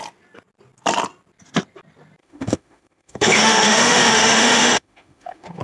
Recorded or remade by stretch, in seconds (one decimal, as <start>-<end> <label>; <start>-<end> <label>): 0.0-2.2 recorded; 2.2-5.6 remade

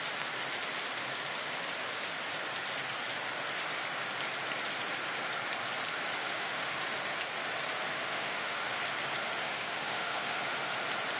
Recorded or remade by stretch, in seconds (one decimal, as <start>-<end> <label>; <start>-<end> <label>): 0.0-6.2 recorded; 6.2-6.8 remade; 6.8-7.9 recorded; 7.9-8.8 remade; 8.8-9.4 recorded; 9.4-10.4 remade; 10.4-11.2 recorded

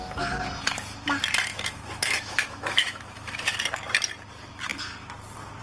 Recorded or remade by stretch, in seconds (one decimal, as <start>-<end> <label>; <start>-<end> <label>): 0.0-1.5 recorded; 1.5-3.6 remade; 3.6-5.6 recorded

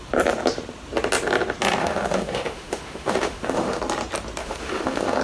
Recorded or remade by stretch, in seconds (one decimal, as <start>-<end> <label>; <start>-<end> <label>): 0.0-1.8 recorded; 1.8-3.8 remade; 3.8-4.4 recorded; 4.4-5.2 remade

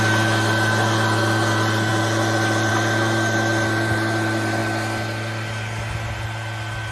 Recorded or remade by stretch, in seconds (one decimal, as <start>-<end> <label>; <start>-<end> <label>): 0.0-6.9 recorded

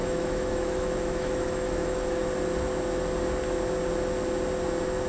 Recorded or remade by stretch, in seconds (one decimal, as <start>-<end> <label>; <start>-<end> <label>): 0.0-2.2 remade; 2.2-5.1 recorded

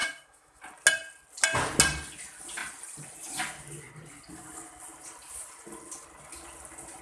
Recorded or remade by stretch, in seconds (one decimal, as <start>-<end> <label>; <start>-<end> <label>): 0.0-0.6 remade; 0.6-7.0 recorded

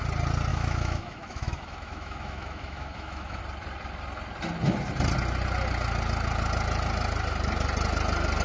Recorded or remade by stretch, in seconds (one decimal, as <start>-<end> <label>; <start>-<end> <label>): 0.0-0.5 recorded; 0.5-3.4 remade; 3.4-8.4 recorded